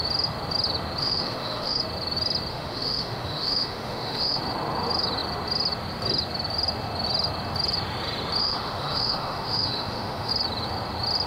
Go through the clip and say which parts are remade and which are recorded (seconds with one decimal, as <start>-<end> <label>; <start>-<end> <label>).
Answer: 0.0-1.0 recorded; 1.0-1.8 remade; 1.8-2.5 recorded; 2.5-4.4 remade; 4.4-8.4 recorded; 8.4-10.3 remade; 10.3-11.3 recorded